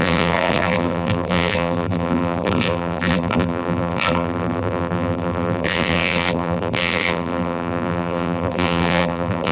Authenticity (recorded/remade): remade